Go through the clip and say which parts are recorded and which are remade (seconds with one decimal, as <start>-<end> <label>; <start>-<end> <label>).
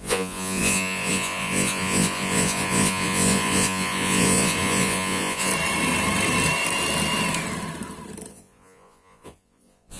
0.0-5.5 remade; 5.5-8.3 recorded; 8.3-10.0 remade